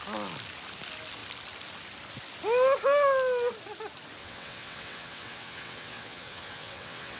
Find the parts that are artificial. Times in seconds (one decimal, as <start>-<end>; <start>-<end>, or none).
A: 4.2-7.2